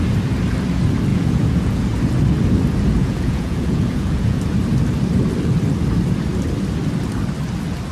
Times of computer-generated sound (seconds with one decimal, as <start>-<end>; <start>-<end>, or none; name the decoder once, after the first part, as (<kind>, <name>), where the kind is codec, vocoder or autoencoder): 1.1-1.8 (vocoder, Vocos); 3.0-4.4